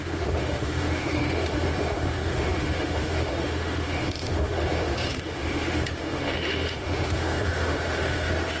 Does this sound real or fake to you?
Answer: fake